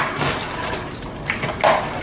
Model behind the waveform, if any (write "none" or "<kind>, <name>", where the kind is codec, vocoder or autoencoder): none